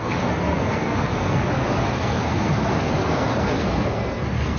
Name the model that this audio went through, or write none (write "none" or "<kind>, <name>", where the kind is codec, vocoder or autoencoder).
codec, SNAC